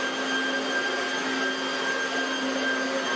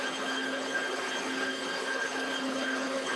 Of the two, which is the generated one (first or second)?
second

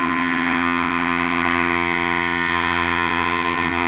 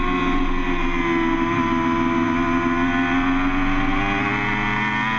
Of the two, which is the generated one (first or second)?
first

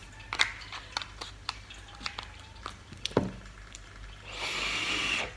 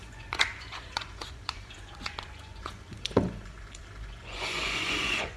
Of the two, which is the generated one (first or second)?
second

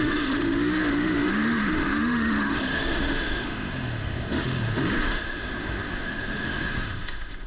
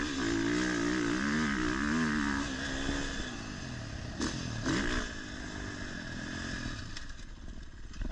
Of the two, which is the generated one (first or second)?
first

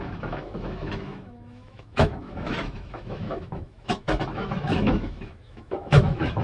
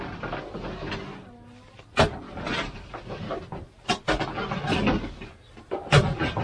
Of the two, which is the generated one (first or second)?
first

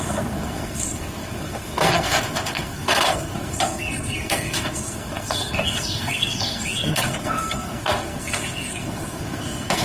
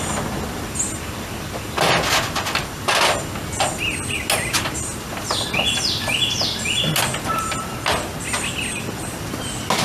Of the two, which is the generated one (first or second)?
first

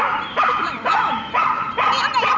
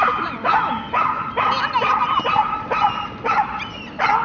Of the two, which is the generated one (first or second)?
first